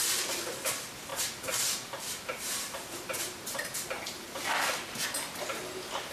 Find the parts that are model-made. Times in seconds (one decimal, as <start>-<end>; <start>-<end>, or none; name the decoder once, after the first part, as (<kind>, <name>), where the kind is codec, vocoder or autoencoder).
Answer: 1.1-4.4 (vocoder, BigVGAN v2)